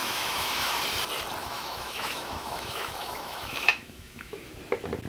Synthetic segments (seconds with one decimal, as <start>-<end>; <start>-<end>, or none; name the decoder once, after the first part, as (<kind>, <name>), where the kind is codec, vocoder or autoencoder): 0.0-0.8 (autoencoder, DAC-VAE); 1.4-4.5